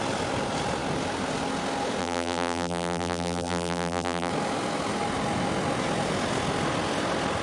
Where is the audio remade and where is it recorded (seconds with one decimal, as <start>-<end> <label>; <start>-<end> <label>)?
0.0-2.0 recorded; 2.0-4.3 remade; 4.3-7.4 recorded